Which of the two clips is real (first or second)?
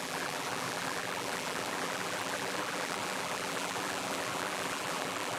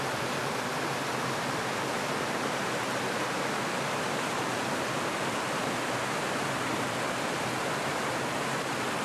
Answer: second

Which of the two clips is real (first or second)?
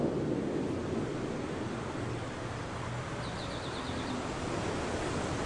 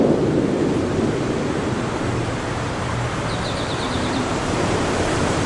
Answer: first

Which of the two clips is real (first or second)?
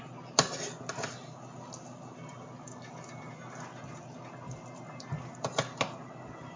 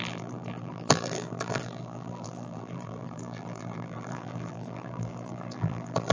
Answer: first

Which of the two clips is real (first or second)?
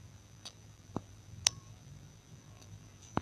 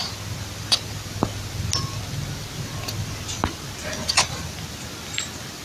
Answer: second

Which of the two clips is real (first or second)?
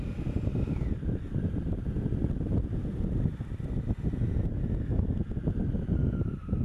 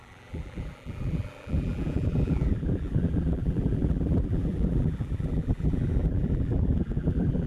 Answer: first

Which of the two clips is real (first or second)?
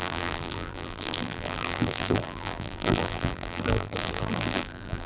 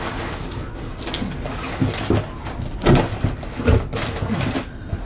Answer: second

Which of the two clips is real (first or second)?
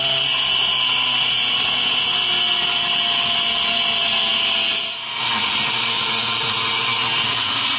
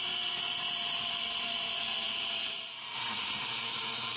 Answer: first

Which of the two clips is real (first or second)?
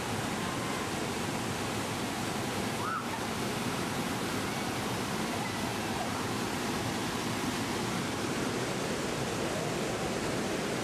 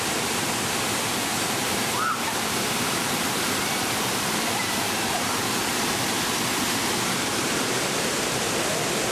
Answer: first